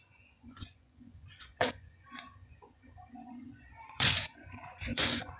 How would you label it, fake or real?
fake